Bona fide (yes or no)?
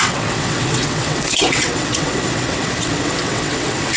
no